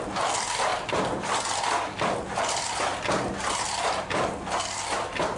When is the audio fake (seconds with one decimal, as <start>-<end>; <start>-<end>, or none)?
none